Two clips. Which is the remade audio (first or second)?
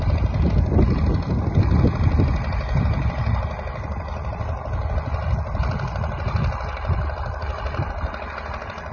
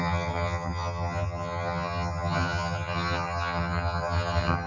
second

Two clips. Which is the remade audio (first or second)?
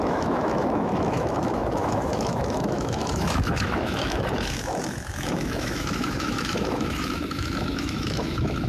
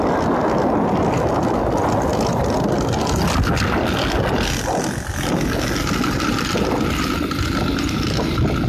first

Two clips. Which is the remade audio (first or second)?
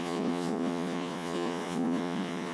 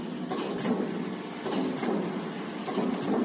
first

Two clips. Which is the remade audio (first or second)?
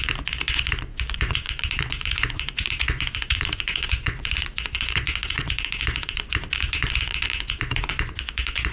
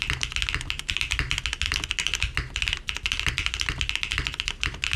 first